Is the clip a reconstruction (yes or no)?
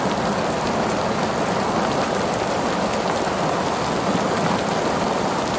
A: no